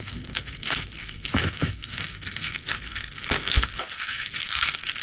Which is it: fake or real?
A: fake